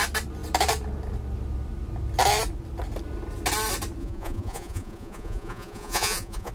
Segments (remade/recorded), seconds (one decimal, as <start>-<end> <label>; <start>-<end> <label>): 0.0-4.0 recorded; 4.0-6.5 remade